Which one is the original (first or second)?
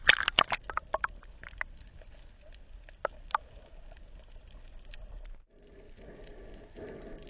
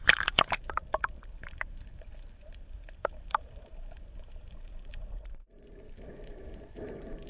first